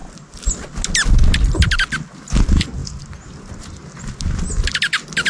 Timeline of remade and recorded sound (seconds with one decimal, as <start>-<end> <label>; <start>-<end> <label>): 0.0-5.3 recorded